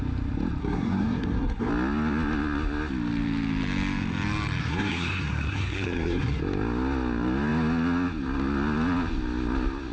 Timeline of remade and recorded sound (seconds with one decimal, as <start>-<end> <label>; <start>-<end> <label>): 0.0-0.6 recorded; 0.6-1.7 remade; 1.7-4.6 recorded; 4.6-6.4 remade; 6.4-9.9 recorded